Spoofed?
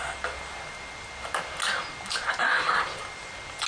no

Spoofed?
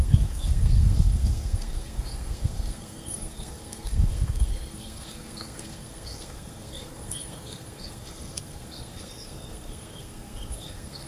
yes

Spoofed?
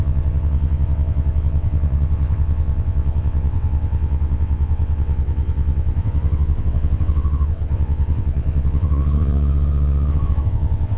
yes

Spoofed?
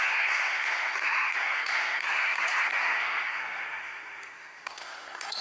yes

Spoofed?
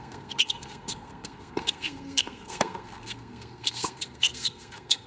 yes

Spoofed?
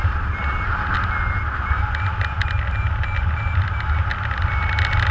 no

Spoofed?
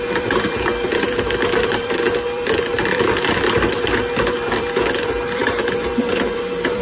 yes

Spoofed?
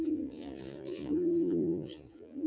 yes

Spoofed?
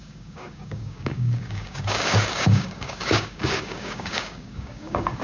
yes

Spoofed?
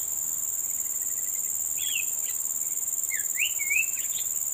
no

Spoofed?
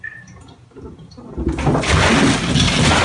no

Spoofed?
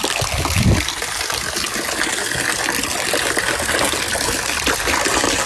no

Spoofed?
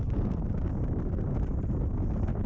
no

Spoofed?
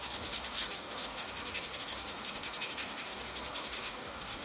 yes